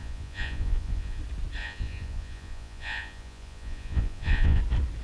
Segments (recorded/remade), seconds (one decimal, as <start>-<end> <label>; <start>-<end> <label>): 0.0-1.2 remade; 1.2-1.6 recorded; 1.6-4.6 remade; 4.6-5.0 recorded